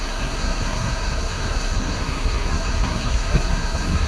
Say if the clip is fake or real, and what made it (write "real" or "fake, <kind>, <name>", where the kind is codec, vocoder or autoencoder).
fake, codec, SNAC